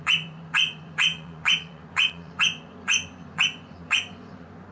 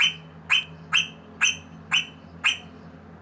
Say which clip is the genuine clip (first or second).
second